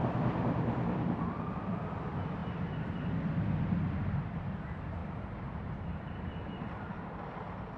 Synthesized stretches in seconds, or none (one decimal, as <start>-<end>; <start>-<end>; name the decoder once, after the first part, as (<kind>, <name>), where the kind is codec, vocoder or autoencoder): 1.2-7.8 (vocoder, BigVGAN v2)